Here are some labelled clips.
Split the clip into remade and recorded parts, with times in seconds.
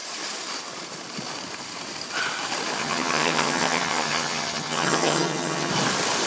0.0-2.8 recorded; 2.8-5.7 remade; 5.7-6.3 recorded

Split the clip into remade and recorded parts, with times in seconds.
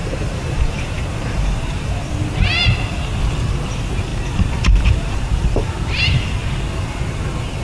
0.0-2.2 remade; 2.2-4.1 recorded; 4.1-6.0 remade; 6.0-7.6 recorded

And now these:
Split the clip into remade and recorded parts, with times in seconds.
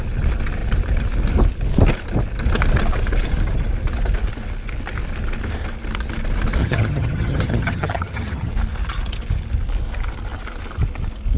0.0-6.6 recorded; 6.6-8.5 remade; 8.5-11.4 recorded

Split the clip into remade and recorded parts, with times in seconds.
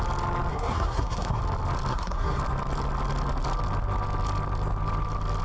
0.0-0.5 recorded; 0.5-1.4 remade; 1.4-1.9 recorded; 1.9-2.4 remade; 2.4-5.4 recorded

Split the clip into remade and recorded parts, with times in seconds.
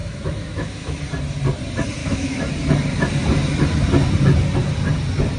0.0-1.0 remade; 1.0-2.0 recorded; 2.0-2.5 remade; 2.5-5.4 recorded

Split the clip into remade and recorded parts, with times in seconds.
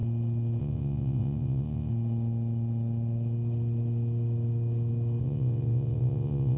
0.0-0.6 recorded; 0.6-1.9 remade; 1.9-5.2 recorded; 5.2-6.6 remade